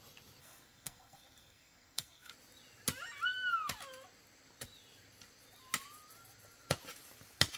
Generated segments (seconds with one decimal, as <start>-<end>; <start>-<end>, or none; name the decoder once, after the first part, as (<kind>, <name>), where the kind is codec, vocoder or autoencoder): 0.4-2.3 (codec, SNAC)